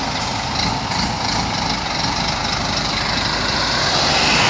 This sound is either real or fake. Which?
real